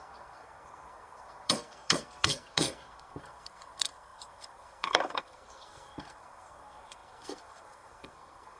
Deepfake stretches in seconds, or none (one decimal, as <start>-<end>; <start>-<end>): 0.0-8.6